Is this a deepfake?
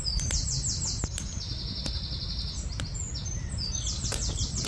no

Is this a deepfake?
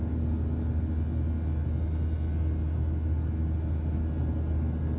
no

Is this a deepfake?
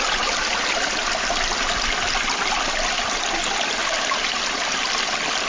no